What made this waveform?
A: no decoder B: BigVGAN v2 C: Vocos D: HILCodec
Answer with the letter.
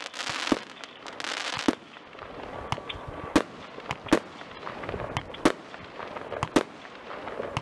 A